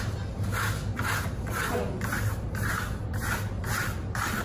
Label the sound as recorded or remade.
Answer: recorded